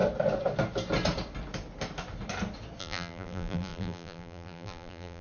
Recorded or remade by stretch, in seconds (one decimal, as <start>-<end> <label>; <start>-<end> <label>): 0.0-2.8 recorded; 2.8-5.2 remade